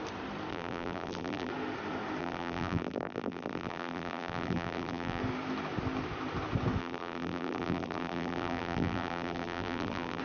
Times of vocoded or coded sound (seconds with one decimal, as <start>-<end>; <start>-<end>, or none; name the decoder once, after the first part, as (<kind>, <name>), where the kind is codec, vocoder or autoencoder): 0.5-1.5 (vocoder, BigVGAN v2); 2.2-5.2; 6.8-10.2